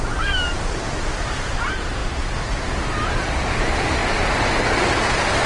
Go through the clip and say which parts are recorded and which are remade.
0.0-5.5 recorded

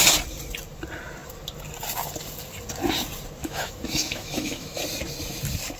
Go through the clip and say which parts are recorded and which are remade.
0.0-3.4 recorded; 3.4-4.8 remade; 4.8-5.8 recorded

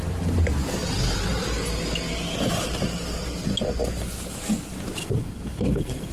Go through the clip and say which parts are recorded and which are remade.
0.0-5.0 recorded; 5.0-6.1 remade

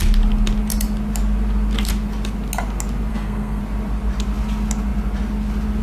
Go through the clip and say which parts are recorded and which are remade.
0.0-3.1 recorded; 3.1-3.6 remade; 3.6-5.8 recorded

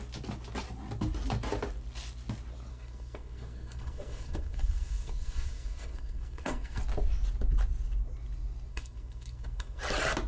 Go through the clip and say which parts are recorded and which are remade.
0.0-2.7 recorded; 2.7-6.8 remade; 6.8-8.7 recorded; 8.7-9.8 remade; 9.8-10.3 recorded

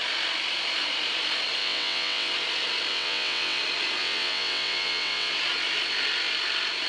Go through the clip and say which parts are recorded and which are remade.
0.0-1.6 recorded; 1.6-2.3 remade; 2.3-2.9 recorded; 2.9-3.6 remade; 3.6-4.0 recorded; 4.0-5.3 remade; 5.3-6.9 recorded

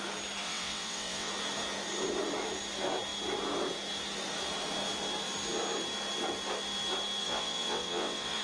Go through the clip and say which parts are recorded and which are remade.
0.0-0.4 recorded; 0.4-1.3 remade; 1.3-7.2 recorded; 7.2-8.4 remade